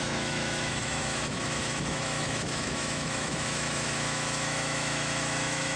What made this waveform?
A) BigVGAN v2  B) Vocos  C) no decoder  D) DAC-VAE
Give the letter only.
D